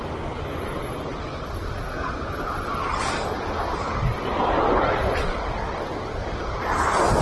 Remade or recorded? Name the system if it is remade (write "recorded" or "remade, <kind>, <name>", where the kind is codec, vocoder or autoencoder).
recorded